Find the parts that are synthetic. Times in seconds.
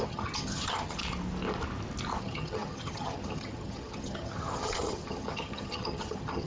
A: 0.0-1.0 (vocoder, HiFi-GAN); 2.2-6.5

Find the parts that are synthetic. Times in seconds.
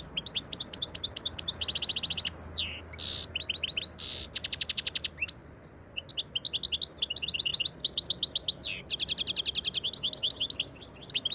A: 5.4-6.1 (vocoder, Vocos)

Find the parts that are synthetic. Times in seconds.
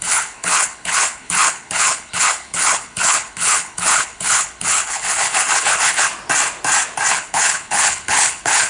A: 0.0-6.1 (codec, HILCodec); 7.1-8.7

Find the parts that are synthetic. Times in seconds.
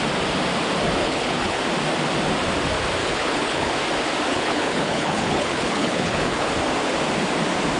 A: 1.0-1.6 (codec, HILCodec); 3.0-3.7; 4.3-6.5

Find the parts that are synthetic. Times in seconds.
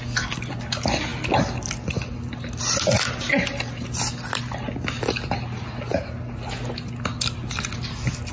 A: none